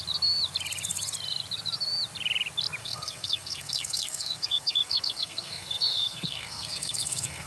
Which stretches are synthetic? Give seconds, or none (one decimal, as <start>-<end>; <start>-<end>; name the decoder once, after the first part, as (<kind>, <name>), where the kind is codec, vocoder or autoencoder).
2.8-7.5 (codec, SNAC)